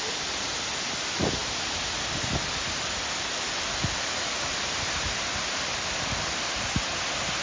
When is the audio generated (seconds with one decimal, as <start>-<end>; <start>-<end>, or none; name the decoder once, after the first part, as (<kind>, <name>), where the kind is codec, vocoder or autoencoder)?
none

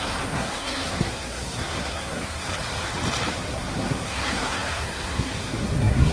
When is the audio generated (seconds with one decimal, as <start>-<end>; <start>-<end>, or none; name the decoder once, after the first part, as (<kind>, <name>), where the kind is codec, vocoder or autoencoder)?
0.0-2.5 (codec, SNAC); 3.3-6.1

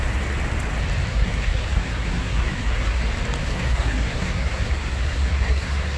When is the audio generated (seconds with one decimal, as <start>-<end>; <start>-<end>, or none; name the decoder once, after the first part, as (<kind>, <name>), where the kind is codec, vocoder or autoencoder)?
1.1-3.0 (codec, SNAC); 3.4-6.0

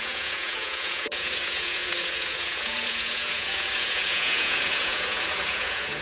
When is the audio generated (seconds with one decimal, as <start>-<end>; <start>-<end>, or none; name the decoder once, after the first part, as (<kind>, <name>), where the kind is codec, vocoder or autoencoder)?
0.0-6.0 (vocoder, Vocos)

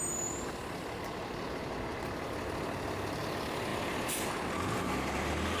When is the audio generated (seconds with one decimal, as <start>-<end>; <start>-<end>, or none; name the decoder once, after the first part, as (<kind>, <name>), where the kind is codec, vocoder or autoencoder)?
3.7-4.3 (vocoder, BigVGAN v2)